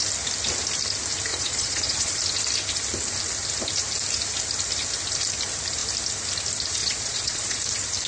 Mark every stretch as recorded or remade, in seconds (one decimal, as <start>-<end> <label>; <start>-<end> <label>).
0.0-1.3 recorded; 1.3-2.2 remade; 2.2-6.8 recorded; 6.8-7.6 remade; 7.6-8.1 recorded